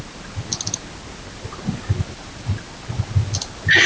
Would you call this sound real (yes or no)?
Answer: yes